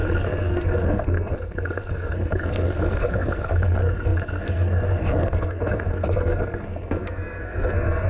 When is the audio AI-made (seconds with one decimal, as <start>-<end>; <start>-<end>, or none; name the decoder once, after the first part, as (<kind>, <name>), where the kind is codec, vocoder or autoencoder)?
0.0-8.1 (codec, SNAC)